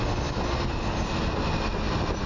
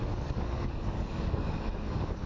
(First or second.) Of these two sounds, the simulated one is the second